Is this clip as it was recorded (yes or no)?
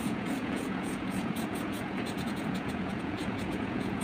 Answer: no